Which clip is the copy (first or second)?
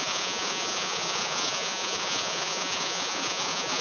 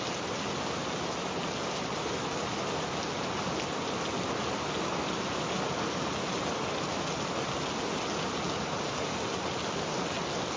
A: first